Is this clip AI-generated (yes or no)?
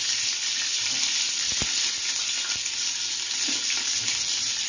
no